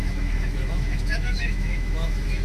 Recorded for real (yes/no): no